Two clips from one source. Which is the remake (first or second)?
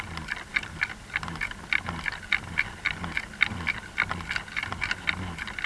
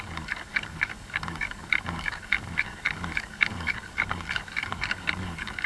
second